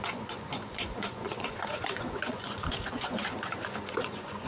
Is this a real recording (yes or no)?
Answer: no